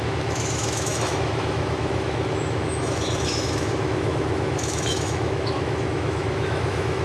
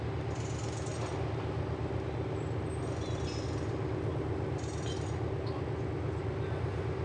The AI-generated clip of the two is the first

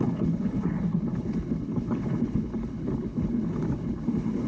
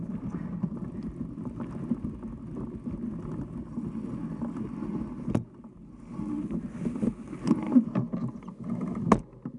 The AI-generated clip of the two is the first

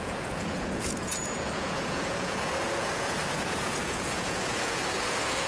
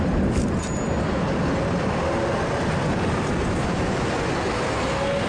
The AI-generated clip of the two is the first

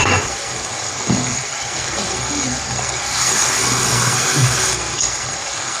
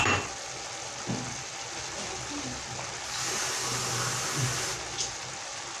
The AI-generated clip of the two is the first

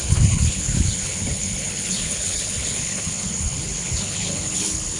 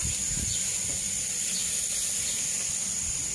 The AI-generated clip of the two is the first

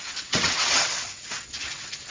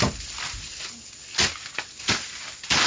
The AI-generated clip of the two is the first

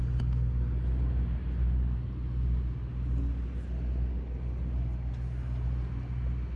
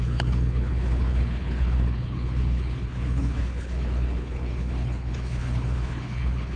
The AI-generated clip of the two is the second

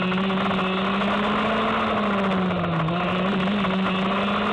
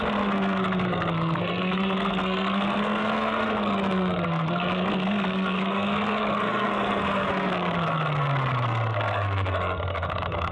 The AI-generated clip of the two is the second